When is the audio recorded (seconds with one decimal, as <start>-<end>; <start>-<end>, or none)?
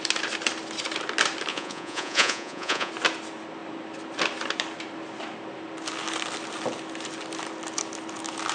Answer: 0.0-1.5; 2.9-8.5